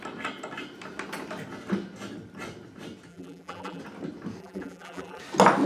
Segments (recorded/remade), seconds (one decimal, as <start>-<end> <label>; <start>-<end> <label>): 0.0-3.1 recorded; 3.1-3.8 remade; 3.8-4.4 recorded; 4.4-5.2 remade; 5.2-5.7 recorded